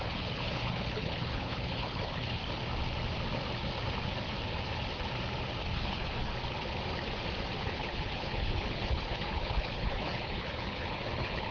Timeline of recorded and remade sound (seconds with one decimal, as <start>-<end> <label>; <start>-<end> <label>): 0.0-2.4 remade; 2.4-5.7 recorded; 5.7-6.3 remade; 6.3-7.6 recorded; 7.6-11.5 remade